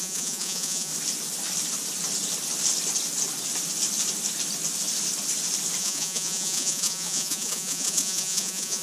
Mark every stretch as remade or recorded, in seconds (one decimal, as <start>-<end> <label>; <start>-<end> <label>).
0.0-0.9 remade; 0.9-5.8 recorded; 5.8-8.8 remade